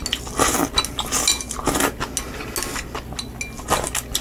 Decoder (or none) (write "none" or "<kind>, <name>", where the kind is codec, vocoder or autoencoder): none